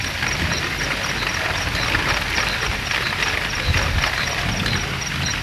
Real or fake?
real